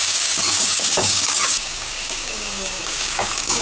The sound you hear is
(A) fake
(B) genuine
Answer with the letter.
A